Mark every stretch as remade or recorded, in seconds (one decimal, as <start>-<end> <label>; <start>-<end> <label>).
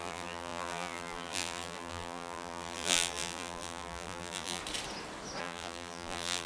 0.0-4.6 remade; 4.6-5.4 recorded; 5.4-6.5 remade